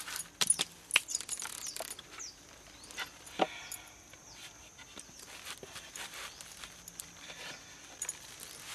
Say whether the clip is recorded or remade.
recorded